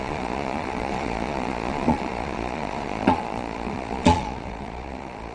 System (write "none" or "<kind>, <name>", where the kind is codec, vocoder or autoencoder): vocoder, Vocos